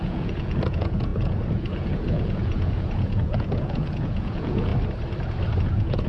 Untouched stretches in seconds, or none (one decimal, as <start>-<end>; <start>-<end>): 4.7-5.6